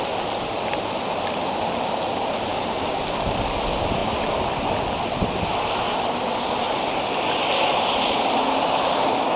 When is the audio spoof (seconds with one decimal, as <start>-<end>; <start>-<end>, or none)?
2.5-3.0

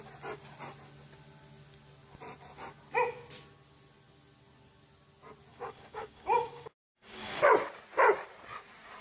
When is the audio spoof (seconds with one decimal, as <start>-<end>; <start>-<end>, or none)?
5.5-7.4

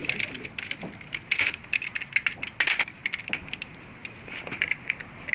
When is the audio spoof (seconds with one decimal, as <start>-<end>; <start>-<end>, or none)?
none

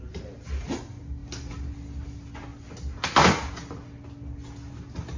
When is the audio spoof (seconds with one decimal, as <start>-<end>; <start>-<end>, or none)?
none